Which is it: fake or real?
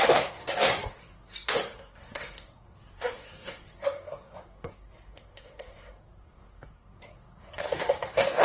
fake